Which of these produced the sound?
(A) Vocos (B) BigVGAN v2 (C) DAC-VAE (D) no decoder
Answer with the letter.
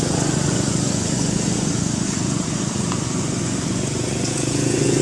A